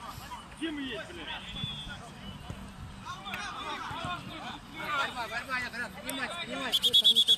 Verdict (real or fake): real